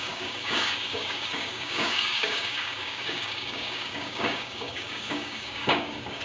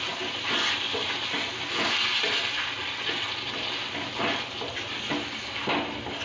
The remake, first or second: first